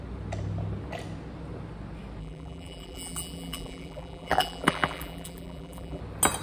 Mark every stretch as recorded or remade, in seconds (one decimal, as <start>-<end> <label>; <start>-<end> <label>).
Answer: 0.0-2.2 recorded; 2.2-6.0 remade; 6.0-6.4 recorded